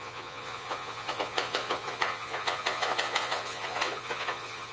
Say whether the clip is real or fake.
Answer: fake